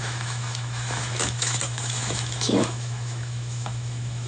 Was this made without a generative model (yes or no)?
no